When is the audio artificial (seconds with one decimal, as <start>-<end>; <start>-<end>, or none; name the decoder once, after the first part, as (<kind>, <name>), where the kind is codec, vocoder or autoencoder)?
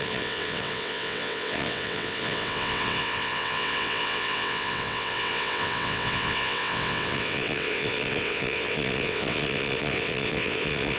0.0-11.0 (vocoder, WaveNeXt)